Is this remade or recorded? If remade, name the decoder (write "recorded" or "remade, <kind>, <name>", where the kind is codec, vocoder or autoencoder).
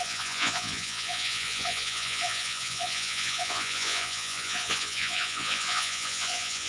remade, vocoder, Vocos